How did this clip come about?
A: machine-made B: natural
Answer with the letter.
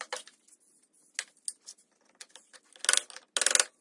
B